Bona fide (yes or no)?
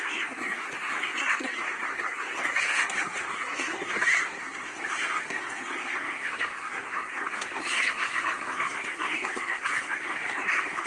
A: no